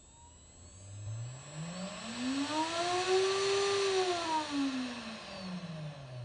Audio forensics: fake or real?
real